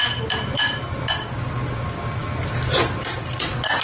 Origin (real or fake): real